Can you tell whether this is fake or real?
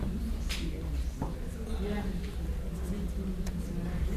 real